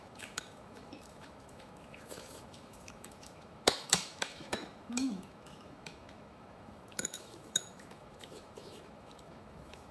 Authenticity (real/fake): fake